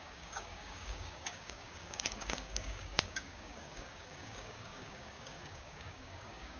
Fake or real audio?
fake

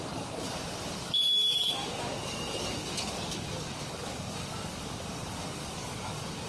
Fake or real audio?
fake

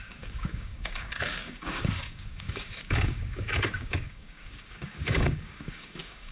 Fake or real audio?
fake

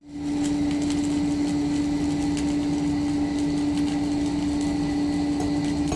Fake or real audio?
real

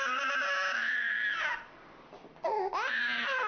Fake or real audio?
real